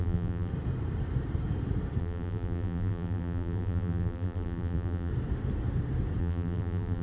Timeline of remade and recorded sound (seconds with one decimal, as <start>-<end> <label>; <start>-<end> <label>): 0.0-0.5 remade; 0.5-2.0 recorded; 2.0-5.1 remade; 5.1-6.2 recorded; 6.2-7.0 remade